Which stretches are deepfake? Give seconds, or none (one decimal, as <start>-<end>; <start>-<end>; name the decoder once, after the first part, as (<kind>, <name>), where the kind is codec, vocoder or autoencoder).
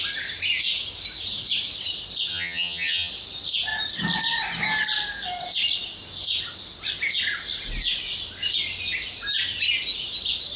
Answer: 2.3-3.1 (vocoder, HiFi-GAN)